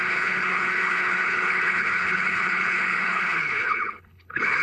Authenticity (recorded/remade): remade